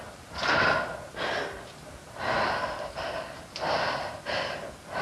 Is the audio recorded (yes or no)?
yes